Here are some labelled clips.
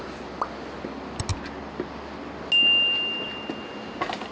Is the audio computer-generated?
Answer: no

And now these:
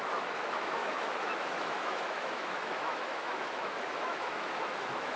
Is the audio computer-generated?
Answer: yes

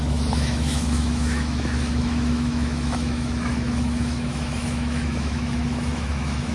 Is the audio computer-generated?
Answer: yes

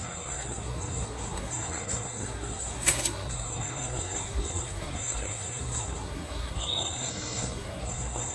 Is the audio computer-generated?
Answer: yes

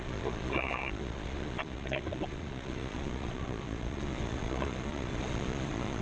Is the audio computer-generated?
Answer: yes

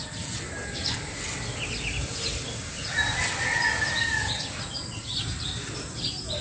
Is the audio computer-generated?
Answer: no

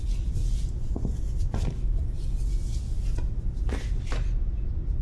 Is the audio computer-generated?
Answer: no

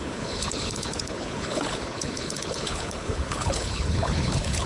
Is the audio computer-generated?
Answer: yes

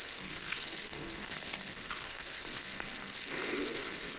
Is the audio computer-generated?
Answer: yes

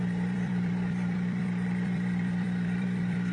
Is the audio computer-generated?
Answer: yes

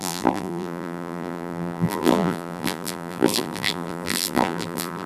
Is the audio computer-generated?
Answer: yes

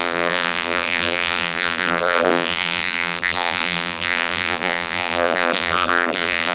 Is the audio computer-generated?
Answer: yes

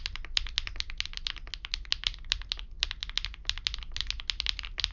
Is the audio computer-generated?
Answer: no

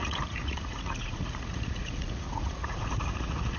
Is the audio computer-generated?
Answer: yes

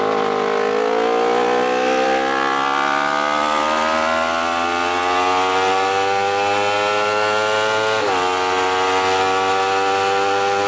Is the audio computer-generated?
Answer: no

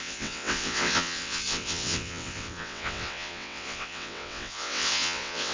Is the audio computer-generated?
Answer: yes